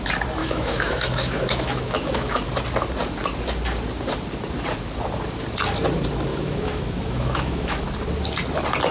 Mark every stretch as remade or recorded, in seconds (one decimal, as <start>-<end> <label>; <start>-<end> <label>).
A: 0.0-0.4 recorded; 0.4-2.5 remade; 2.5-6.3 recorded; 6.3-7.8 remade; 7.8-8.9 recorded